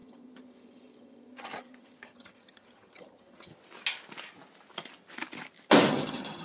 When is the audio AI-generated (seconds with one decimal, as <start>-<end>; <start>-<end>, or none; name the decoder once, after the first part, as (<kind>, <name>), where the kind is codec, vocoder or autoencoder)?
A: 0.0-3.5 (vocoder, HiFi-GAN); 5.9-6.4